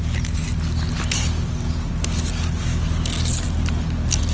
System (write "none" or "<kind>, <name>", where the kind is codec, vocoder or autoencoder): none